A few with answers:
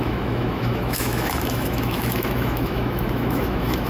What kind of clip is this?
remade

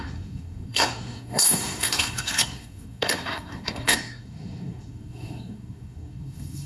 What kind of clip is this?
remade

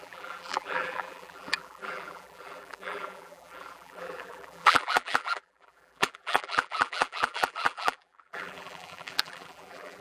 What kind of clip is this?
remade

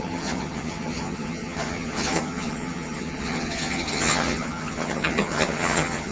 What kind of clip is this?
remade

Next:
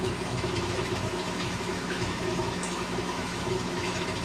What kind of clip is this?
remade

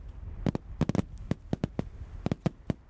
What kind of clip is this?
recorded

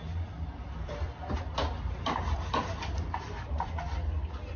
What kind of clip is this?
remade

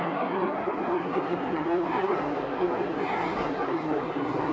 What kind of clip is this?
remade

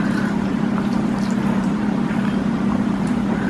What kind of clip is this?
remade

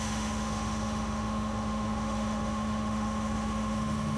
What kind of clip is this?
remade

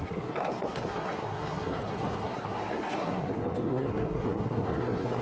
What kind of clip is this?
remade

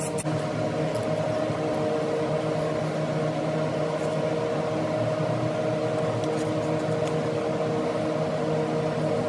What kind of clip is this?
recorded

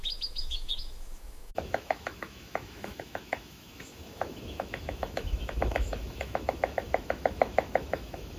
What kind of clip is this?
remade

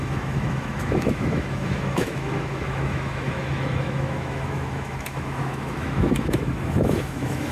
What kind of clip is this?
remade